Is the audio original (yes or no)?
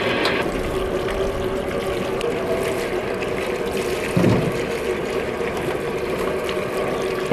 yes